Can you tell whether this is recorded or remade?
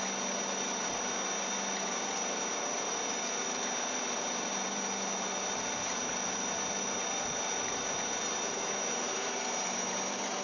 remade